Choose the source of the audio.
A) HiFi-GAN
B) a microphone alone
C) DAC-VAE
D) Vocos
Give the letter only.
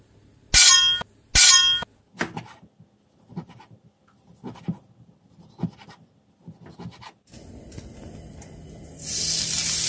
B